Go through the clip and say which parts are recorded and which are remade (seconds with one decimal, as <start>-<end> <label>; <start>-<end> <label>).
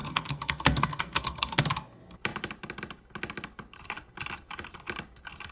0.0-1.6 remade; 1.6-5.5 recorded